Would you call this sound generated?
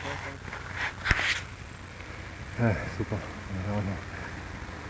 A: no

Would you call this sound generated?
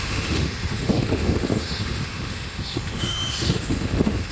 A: yes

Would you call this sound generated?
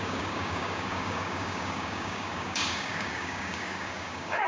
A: yes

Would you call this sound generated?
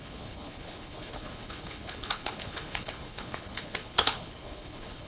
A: yes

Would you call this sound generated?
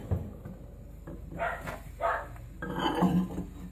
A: no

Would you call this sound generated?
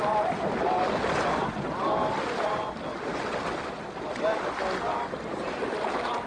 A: no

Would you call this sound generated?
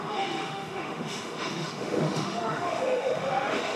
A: yes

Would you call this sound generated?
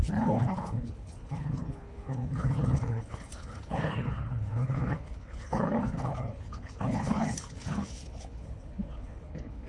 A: yes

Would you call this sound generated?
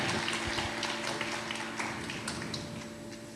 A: no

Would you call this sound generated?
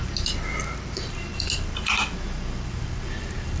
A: no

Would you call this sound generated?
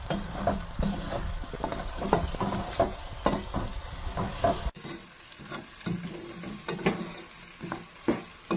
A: no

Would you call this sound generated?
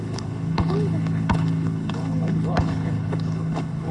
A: yes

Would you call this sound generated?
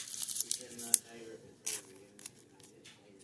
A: no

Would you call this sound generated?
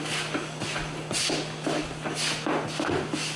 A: no